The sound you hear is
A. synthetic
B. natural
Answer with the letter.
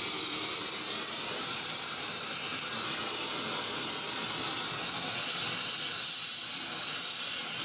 B